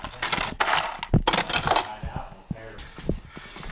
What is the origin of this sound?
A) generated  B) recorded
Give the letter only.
B